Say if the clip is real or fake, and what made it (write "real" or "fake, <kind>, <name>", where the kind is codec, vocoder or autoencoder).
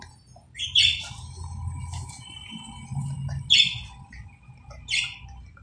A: real